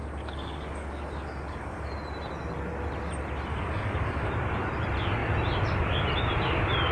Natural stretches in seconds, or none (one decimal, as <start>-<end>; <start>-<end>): 1.9-3.5; 4.3-6.9